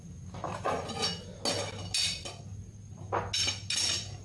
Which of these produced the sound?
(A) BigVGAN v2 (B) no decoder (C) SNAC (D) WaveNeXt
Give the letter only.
B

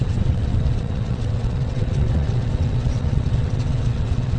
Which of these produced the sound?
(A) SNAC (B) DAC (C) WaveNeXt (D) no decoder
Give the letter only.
C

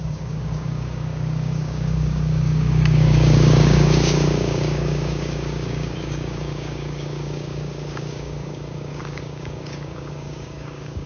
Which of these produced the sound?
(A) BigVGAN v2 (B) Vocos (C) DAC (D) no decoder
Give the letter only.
C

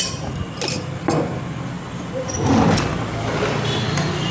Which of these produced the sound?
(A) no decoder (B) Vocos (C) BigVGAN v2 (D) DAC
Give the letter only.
A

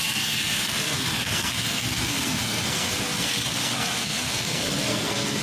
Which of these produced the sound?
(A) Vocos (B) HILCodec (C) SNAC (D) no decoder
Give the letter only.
C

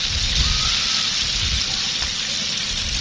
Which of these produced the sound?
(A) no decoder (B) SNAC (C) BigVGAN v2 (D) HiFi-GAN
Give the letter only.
A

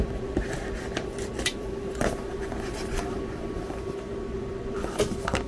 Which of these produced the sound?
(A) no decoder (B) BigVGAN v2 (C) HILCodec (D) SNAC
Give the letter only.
B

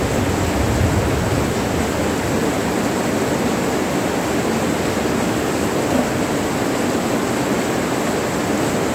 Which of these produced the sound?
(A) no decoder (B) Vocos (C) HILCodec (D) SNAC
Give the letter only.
A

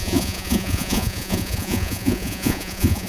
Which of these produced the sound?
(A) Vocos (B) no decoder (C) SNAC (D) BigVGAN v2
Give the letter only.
A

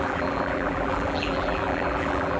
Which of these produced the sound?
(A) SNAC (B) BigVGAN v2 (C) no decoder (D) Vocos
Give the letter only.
B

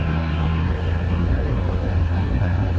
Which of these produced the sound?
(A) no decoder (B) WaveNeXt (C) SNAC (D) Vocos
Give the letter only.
C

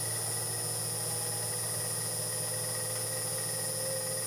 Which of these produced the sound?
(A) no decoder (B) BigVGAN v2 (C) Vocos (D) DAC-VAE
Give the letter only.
A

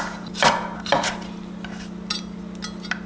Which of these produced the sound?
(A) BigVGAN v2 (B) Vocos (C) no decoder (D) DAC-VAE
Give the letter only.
C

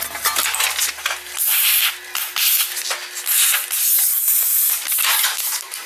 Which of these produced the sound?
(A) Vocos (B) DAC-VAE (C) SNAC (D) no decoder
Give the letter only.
D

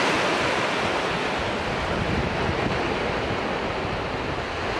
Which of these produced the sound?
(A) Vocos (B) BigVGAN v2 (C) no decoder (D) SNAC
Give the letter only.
C